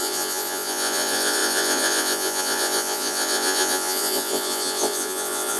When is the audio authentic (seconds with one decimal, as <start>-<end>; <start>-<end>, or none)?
none